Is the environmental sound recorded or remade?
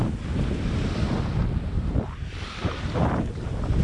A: recorded